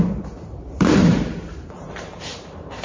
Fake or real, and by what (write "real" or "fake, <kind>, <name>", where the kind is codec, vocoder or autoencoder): fake, vocoder, BigVGAN v2